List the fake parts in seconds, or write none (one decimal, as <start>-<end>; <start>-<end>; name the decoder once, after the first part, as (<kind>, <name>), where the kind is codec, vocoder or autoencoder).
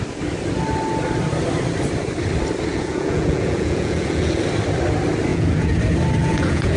2.7-4.4 (vocoder, Vocos); 5.3-5.8; 6.2-6.8